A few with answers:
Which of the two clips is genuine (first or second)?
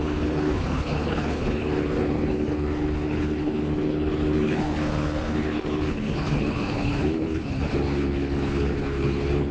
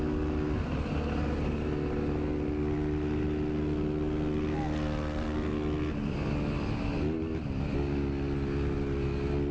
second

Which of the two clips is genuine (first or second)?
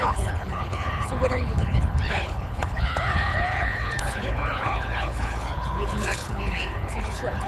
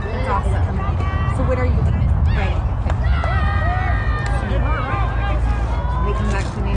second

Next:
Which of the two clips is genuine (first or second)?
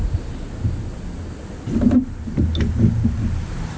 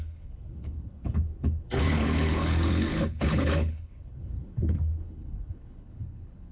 first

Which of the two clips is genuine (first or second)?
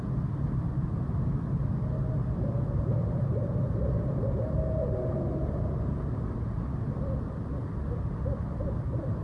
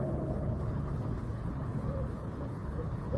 first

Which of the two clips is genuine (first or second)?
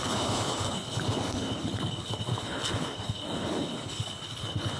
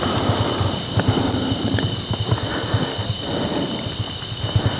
second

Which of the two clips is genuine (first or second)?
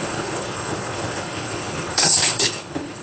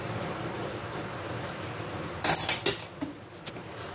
second